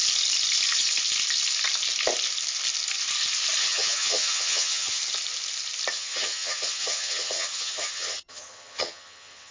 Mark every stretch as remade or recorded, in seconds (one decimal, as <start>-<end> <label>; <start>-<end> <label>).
0.0-3.6 recorded; 3.6-5.0 remade; 5.0-5.9 recorded; 5.9-9.5 remade